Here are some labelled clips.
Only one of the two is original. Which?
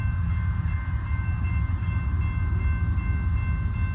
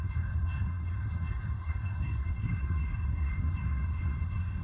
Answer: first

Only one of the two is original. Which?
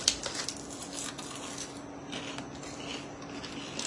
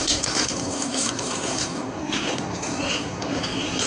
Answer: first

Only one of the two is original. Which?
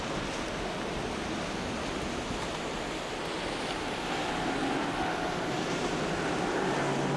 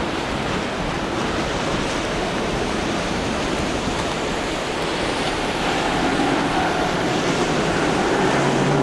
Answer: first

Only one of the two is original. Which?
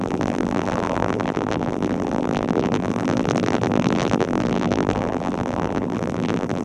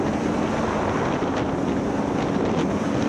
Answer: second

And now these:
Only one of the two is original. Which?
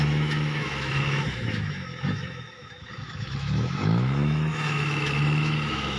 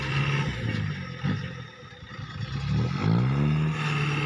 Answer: second